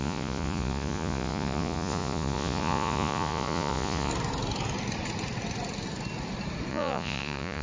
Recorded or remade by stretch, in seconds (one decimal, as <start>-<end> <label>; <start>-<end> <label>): 0.0-4.1 remade; 4.1-6.7 recorded; 6.7-7.6 remade